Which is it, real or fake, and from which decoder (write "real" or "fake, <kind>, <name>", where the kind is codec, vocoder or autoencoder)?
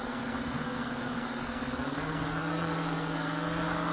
fake, codec, SNAC